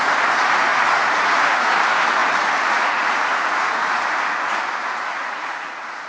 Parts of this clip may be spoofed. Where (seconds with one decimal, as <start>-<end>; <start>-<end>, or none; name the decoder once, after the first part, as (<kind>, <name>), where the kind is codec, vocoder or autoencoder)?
0.0-6.1 (vocoder, Vocos)